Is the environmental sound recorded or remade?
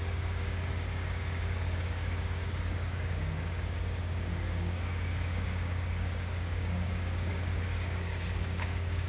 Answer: remade